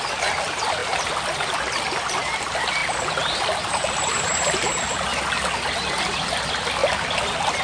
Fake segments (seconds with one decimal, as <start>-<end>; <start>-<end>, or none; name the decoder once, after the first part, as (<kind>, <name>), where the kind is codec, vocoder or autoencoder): 0.0-0.8 (vocoder, BigVGAN v2); 2.0-5.1; 5.9-6.8